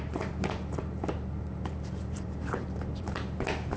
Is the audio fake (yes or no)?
yes